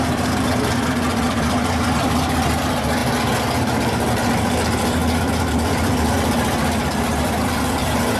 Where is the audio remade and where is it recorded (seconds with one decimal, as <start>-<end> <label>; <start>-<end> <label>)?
0.0-3.0 remade; 3.0-4.1 recorded; 4.1-5.0 remade; 5.0-5.5 recorded; 5.5-8.2 remade

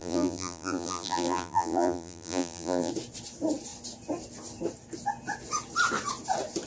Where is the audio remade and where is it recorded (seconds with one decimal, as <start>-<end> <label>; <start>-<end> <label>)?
0.0-2.9 remade; 2.9-6.7 recorded

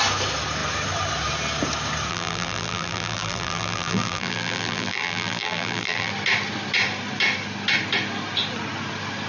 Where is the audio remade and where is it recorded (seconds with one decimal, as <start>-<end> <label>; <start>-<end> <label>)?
0.0-2.1 recorded; 2.1-6.1 remade; 6.1-9.3 recorded

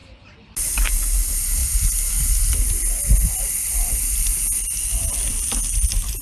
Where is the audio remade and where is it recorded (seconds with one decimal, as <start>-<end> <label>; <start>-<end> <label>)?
0.0-6.2 recorded